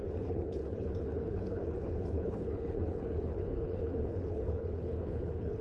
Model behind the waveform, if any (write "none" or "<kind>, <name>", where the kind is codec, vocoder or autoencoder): codec, HILCodec